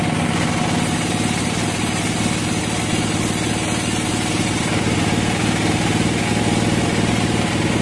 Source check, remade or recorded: recorded